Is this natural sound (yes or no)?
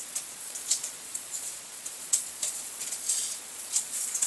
no